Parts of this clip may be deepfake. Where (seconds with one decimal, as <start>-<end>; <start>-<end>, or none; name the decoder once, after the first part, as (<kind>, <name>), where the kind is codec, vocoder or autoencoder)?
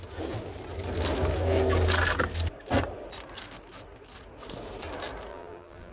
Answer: 5.3-5.9 (vocoder, BigVGAN v2)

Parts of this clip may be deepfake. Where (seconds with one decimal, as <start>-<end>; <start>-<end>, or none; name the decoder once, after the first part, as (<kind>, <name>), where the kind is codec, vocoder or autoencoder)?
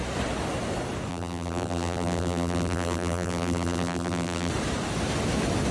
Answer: 1.1-4.5 (vocoder, BigVGAN v2)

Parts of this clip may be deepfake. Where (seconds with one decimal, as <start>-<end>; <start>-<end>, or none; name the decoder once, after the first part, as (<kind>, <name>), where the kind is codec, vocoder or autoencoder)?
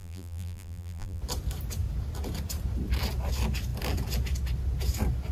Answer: 0.0-1.2 (vocoder, BigVGAN v2)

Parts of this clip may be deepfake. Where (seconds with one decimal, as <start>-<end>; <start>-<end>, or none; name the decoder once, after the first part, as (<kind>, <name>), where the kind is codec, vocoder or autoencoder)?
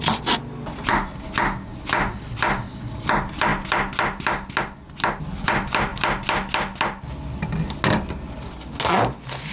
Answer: none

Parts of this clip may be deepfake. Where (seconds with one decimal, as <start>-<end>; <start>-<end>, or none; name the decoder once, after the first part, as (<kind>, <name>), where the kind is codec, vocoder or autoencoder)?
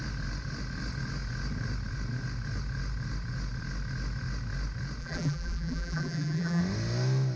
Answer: 5.0-6.6 (vocoder, BigVGAN v2)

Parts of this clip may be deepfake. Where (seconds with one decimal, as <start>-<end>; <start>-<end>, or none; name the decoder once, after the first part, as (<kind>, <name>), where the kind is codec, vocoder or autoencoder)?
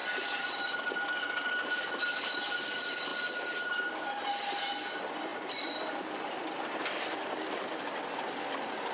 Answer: 0.0-2.5 (vocoder, BigVGAN v2); 5.3-8.0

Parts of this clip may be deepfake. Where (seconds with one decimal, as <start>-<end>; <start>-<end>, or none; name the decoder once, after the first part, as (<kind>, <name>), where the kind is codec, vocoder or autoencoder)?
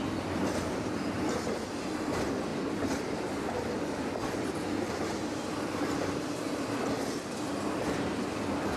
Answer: 2.5-7.0 (vocoder, BigVGAN v2)